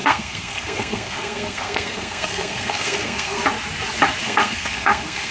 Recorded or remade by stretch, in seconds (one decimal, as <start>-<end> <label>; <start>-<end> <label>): 0.0-3.4 remade; 3.4-4.2 recorded; 4.2-5.3 remade